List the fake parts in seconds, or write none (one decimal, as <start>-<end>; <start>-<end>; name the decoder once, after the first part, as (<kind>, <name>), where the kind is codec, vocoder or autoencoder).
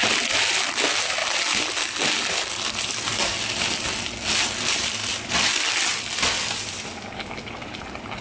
none